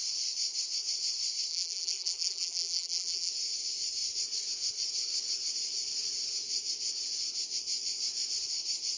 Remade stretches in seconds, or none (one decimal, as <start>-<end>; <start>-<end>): 1.5-3.3

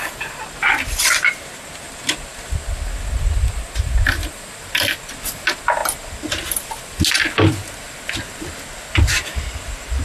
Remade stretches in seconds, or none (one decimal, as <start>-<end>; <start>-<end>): none